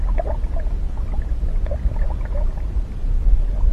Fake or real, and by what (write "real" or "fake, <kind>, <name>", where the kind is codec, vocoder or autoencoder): real